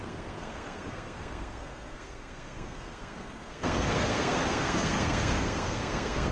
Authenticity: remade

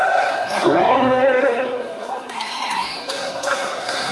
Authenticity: remade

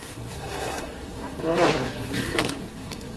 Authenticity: remade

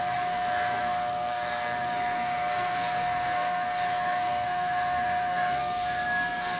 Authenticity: remade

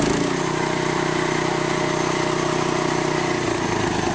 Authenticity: recorded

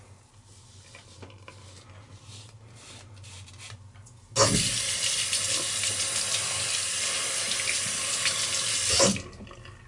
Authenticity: recorded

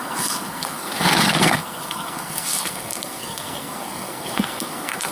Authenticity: remade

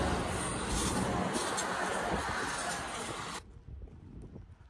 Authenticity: recorded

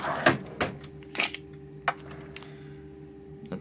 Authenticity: recorded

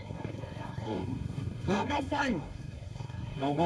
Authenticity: remade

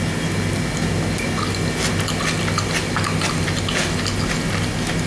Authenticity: recorded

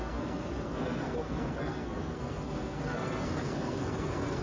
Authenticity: remade